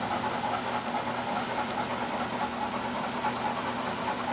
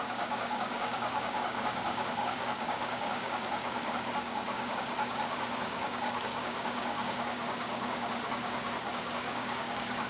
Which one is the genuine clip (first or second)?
first